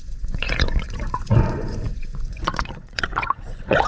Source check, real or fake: fake